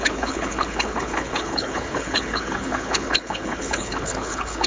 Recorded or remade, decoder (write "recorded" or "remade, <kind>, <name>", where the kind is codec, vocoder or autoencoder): remade, codec, HILCodec